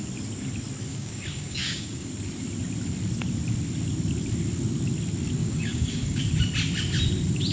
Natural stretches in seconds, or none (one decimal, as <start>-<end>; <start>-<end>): 0.0-0.9; 2.1-5.4; 6.2-7.5